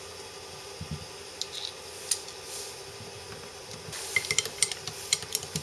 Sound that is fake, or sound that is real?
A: real